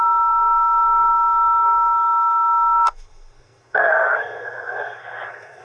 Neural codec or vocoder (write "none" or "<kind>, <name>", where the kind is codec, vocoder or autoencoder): codec, SNAC